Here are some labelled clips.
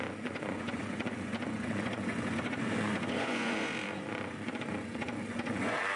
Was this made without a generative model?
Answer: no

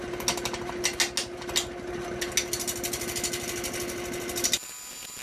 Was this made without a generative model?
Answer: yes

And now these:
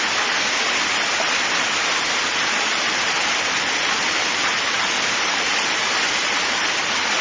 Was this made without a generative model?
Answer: yes